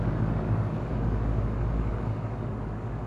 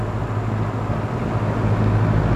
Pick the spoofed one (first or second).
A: first